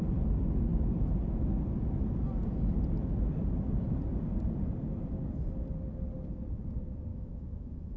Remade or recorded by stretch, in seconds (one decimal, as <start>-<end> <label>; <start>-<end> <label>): 0.0-7.1 recorded; 7.1-8.0 remade